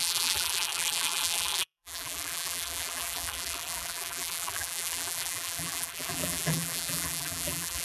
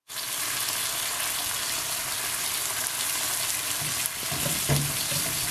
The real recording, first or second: second